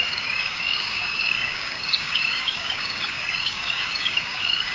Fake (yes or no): yes